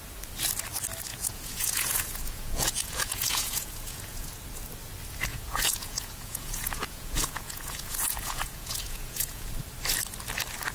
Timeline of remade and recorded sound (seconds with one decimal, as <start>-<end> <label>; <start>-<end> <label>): 0.0-1.1 recorded; 1.1-4.3 remade; 4.3-5.3 recorded; 5.3-9.5 remade; 9.5-10.7 recorded